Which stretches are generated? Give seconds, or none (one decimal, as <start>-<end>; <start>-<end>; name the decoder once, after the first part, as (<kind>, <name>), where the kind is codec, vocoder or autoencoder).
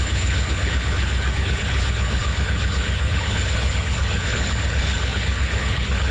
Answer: 0.0-6.1 (codec, HILCodec)